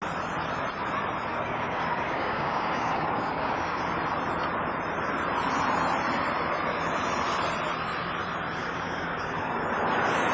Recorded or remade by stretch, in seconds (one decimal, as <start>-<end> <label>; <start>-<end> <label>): 0.0-1.3 recorded; 1.3-3.8 remade; 3.8-8.6 recorded; 8.6-9.6 remade; 9.6-10.3 recorded